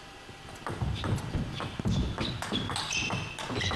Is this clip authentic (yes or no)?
yes